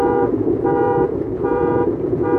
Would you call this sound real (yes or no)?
no